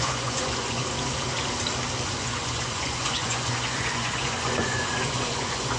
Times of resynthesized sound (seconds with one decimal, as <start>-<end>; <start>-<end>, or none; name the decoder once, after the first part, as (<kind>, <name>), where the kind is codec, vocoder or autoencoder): 0.0-0.8 (vocoder, Vocos); 2.1-5.8